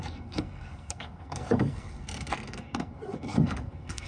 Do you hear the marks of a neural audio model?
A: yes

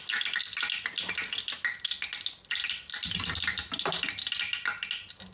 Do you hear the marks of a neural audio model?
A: no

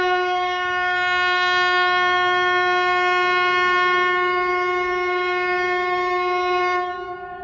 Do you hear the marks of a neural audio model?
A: yes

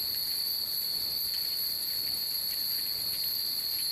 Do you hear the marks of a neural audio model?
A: no